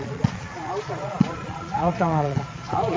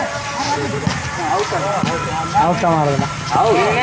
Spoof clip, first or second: first